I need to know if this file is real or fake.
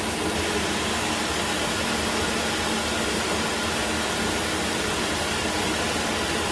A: real